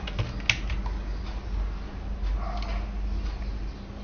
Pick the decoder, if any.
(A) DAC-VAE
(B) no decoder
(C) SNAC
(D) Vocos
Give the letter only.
B